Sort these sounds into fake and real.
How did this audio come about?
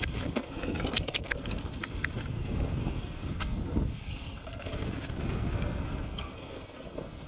fake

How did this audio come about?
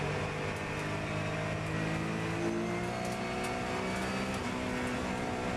real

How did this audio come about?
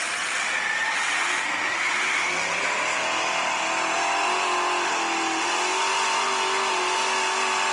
real